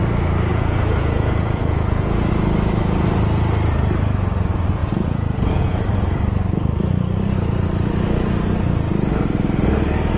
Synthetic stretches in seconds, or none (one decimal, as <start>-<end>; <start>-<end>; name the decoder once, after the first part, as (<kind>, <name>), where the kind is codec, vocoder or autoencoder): 0.5-2.3 (vocoder, Vocos); 4.8-5.8